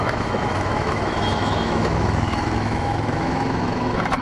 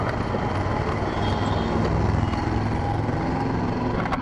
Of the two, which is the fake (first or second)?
first